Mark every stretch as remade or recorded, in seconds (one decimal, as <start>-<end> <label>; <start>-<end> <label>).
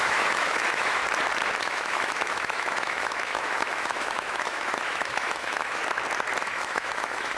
0.0-1.0 remade; 1.0-1.6 recorded; 1.6-5.8 remade; 5.8-6.4 recorded; 6.4-7.4 remade